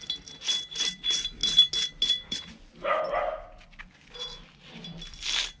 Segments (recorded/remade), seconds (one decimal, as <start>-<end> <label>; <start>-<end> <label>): 0.0-5.6 recorded